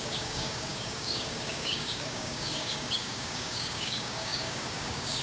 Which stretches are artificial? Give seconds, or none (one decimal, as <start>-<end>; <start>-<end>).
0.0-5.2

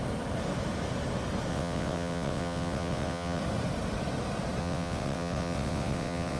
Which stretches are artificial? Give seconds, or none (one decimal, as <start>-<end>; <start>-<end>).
1.5-3.4; 4.6-6.4

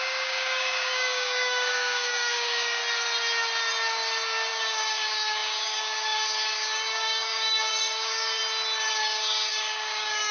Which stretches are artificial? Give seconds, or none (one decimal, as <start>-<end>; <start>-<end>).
0.0-2.8; 4.5-8.4; 8.9-10.3